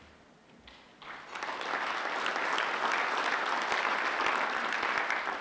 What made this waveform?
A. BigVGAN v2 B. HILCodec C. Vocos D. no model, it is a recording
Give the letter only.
D